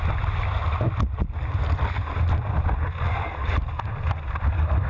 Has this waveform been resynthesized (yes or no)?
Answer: no